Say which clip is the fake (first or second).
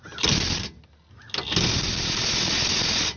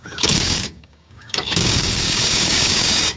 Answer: second